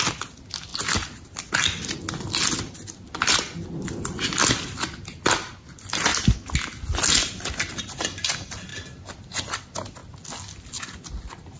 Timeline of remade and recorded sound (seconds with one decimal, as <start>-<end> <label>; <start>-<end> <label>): 0.0-0.7 recorded; 0.7-1.4 remade; 1.4-11.6 recorded

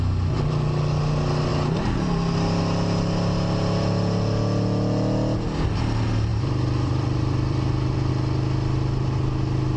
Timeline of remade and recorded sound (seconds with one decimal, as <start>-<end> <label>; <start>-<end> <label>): 0.0-6.3 recorded; 6.3-8.1 remade; 8.1-9.8 recorded

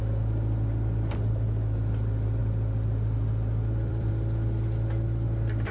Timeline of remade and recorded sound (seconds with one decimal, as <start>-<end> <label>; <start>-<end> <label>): 0.0-2.4 recorded; 2.4-4.1 remade; 4.1-5.7 recorded

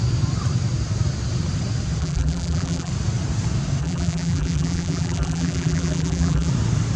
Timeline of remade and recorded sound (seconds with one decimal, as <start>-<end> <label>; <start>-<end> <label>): 0.0-2.0 recorded; 2.0-2.9 remade; 2.9-3.8 recorded; 3.8-6.5 remade; 6.5-7.0 recorded

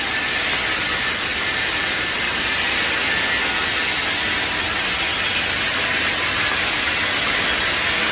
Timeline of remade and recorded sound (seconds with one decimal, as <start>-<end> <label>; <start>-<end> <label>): 0.0-1.3 recorded; 1.3-2.4 remade; 2.4-8.1 recorded